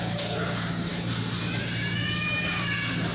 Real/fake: real